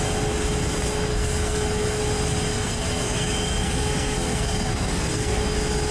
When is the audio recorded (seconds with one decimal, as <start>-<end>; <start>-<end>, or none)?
0.0-1.1; 2.0-2.5; 5.4-5.9